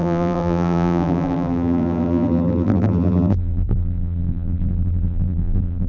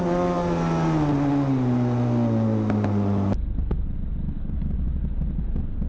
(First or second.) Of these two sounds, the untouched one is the second